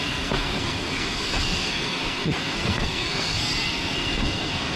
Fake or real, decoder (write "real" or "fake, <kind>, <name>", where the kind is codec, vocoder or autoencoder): fake, codec, SNAC